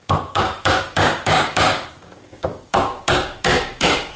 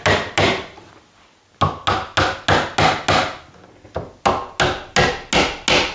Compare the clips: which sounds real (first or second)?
second